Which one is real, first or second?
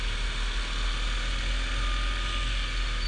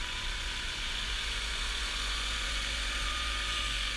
first